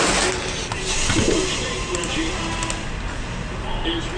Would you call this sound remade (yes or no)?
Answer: no